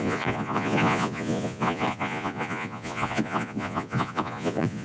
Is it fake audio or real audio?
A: fake